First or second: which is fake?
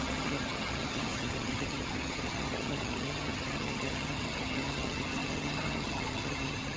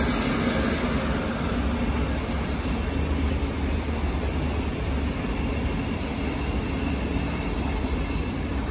first